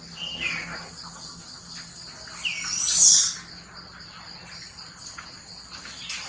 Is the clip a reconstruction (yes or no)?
no